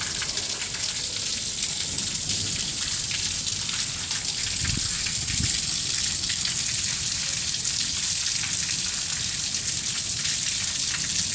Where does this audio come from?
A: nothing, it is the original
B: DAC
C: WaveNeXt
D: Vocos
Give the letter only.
A